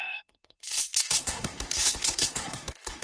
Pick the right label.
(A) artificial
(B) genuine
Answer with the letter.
A